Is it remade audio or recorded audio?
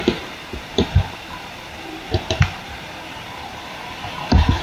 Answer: remade